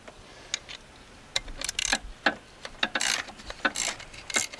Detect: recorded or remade recorded